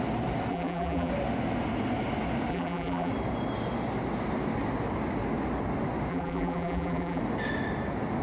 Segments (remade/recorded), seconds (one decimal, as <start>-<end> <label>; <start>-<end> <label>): 0.0-0.5 recorded; 0.5-1.1 remade; 1.1-2.5 recorded; 2.5-3.1 remade; 3.1-6.1 recorded; 6.1-7.2 remade; 7.2-8.2 recorded